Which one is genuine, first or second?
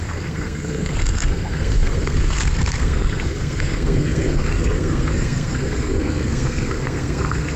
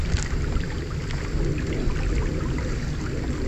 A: second